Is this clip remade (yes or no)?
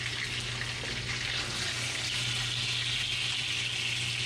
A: no